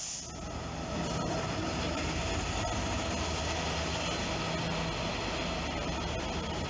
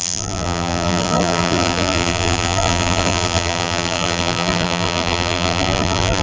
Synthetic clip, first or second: second